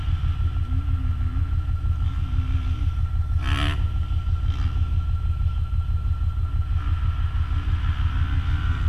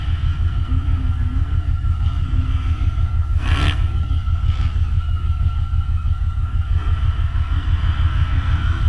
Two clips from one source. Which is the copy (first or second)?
second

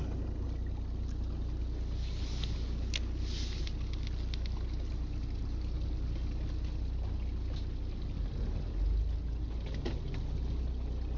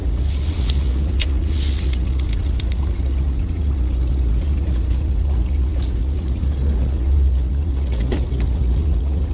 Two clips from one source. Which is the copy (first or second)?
second